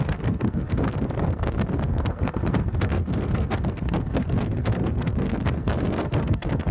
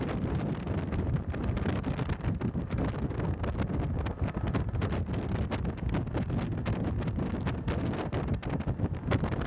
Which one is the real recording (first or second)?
second